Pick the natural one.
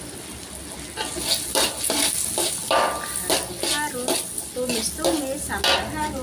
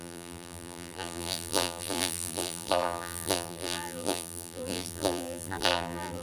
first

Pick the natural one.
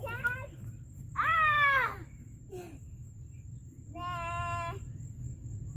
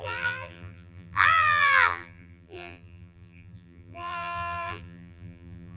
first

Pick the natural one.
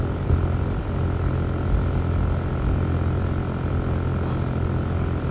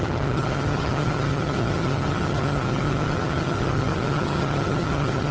first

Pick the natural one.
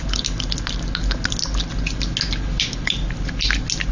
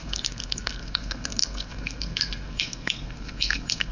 first